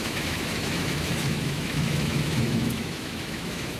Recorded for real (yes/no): no